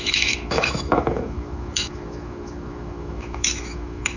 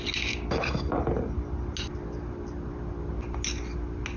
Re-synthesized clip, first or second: first